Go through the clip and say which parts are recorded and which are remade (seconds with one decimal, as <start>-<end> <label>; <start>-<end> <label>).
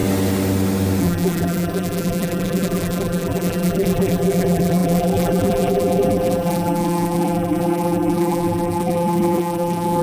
0.0-1.0 recorded; 1.0-10.0 remade